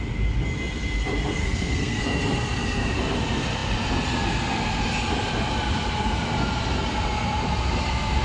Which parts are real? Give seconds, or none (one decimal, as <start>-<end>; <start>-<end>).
0.0-1.4; 2.0-8.2